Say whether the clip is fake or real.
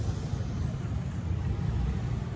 real